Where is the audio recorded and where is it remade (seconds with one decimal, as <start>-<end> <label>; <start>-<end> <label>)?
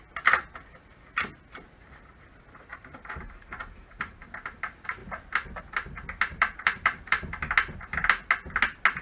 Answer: 0.0-2.7 recorded; 2.7-4.3 remade; 4.3-6.3 recorded; 6.3-7.5 remade; 7.5-9.0 recorded